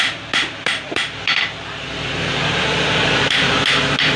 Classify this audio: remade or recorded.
remade